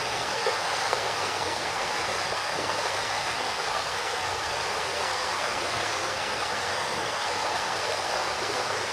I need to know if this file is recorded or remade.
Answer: remade